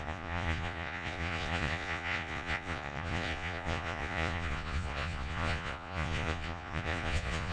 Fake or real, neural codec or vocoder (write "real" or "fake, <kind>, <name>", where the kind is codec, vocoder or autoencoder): fake, vocoder, Vocos